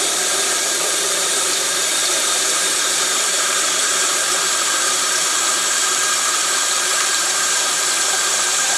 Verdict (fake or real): fake